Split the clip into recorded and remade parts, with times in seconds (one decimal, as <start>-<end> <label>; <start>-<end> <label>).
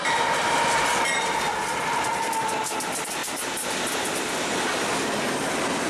0.0-5.9 recorded